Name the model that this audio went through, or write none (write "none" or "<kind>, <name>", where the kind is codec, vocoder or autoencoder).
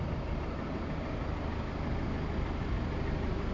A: none